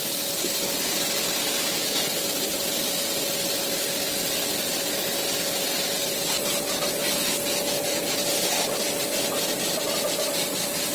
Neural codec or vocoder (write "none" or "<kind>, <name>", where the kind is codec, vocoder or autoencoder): none